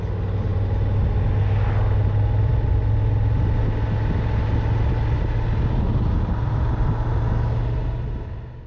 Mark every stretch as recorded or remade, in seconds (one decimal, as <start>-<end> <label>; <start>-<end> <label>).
0.0-8.7 recorded

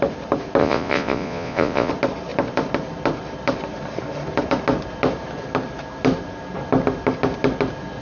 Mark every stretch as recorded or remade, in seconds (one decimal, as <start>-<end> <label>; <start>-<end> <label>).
0.0-0.6 recorded; 0.6-1.9 remade; 1.9-8.0 recorded

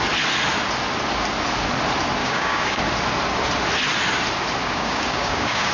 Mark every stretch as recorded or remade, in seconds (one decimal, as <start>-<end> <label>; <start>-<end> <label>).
0.0-2.2 recorded; 2.2-2.8 remade; 2.8-4.6 recorded; 4.6-5.7 remade

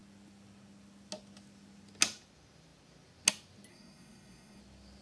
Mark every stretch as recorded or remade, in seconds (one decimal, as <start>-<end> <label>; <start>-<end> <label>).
0.0-3.7 recorded; 3.7-4.6 remade; 4.6-5.0 recorded

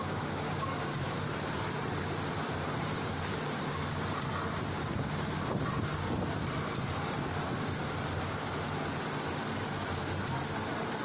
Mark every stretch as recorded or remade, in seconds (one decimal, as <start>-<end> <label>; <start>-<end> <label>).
0.0-0.9 recorded; 0.9-4.3 remade; 4.3-11.0 recorded

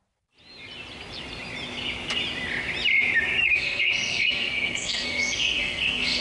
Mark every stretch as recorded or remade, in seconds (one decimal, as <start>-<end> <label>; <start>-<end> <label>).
0.0-3.4 recorded; 3.4-6.2 remade

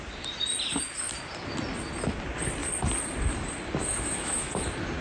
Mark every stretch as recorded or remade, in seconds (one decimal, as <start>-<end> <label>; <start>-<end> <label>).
0.0-3.8 recorded; 3.8-4.5 remade; 4.5-5.0 recorded

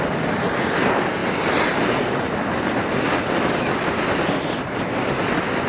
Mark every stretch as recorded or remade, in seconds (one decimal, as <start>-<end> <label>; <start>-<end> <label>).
0.0-5.7 recorded